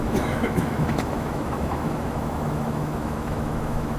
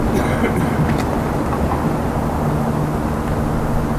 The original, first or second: second